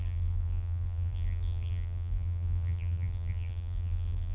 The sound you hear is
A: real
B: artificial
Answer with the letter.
B